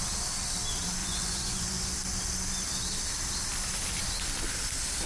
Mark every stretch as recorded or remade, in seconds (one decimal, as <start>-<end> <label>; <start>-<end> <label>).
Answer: 0.0-1.0 recorded; 1.0-1.9 remade; 1.9-5.1 recorded